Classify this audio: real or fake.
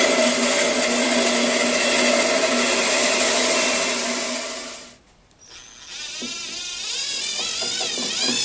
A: real